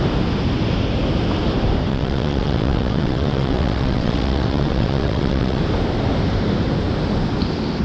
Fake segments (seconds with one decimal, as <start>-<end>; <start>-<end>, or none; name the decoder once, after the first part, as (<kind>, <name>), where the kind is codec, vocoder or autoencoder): 1.9-5.6 (vocoder, WaveNeXt)